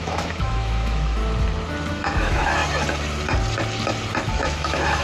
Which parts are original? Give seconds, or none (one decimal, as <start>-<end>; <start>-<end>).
1.2-1.9; 2.6-4.3